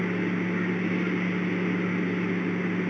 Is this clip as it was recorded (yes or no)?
yes